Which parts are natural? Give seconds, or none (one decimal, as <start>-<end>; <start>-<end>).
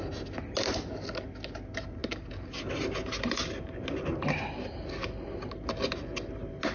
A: 0.0-6.7